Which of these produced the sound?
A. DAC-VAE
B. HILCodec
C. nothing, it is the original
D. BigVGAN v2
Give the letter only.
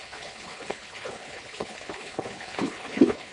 B